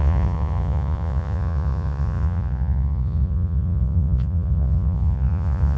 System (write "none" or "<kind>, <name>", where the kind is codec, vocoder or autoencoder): vocoder, Vocos